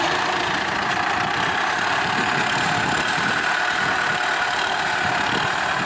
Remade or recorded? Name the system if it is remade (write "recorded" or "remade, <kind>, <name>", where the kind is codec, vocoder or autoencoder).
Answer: recorded